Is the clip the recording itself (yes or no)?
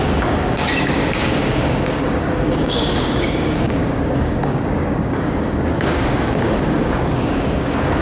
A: no